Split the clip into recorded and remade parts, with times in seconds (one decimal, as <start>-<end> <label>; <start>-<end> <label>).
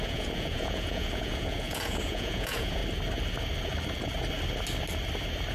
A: 0.0-2.8 remade; 2.8-5.5 recorded